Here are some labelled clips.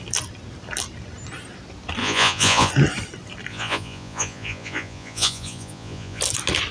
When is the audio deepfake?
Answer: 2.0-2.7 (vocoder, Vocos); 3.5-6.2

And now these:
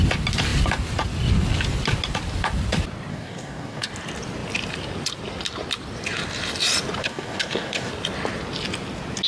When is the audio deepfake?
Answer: 3.1-3.9 (codec, DAC); 7.0-7.9

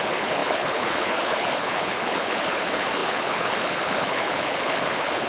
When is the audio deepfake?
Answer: 0.0-5.3 (codec, HILCodec)

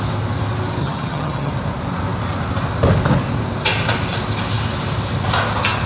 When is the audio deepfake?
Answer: 0.8-1.5 (vocoder, HiFi-GAN)

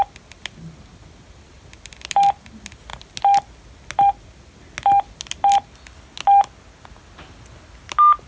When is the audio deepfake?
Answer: none

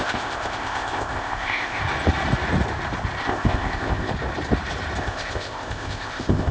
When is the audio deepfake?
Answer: 0.0-1.8 (codec, ZipCodec); 3.2-4.1; 5.0-6.5

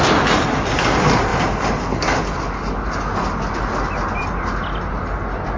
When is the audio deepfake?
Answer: none

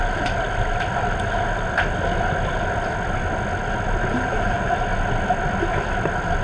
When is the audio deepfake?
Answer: 4.1-4.7 (vocoder, BigVGAN v2)